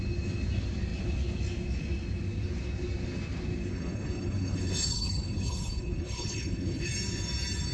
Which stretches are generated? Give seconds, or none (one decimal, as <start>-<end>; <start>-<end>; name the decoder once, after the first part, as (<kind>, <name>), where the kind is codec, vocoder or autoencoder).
3.7-6.9 (codec, HILCodec)